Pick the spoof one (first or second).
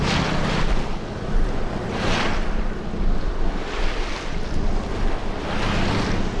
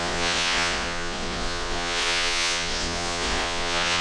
second